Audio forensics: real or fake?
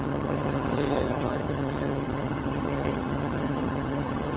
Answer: fake